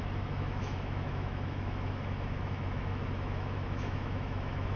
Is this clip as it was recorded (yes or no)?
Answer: no